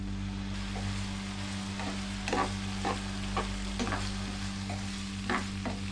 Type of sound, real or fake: real